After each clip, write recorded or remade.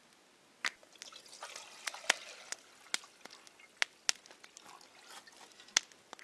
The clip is recorded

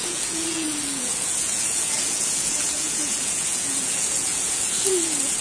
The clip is remade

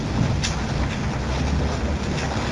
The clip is recorded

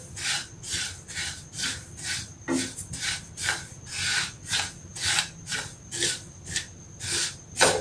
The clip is recorded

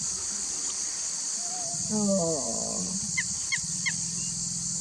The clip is recorded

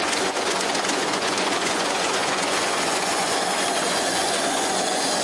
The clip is remade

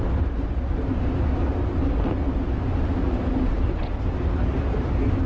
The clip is recorded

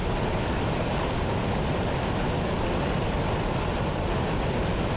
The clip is recorded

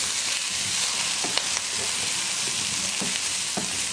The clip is recorded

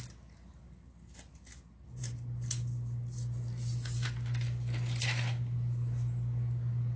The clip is recorded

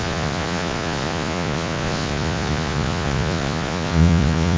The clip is remade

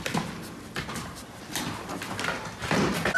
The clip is recorded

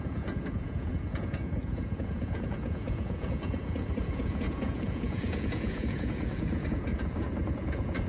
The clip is remade